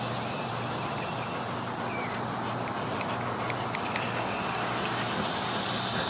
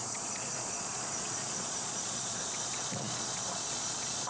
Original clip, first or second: first